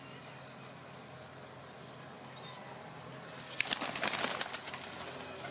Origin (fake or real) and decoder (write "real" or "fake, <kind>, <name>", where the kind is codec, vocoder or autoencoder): real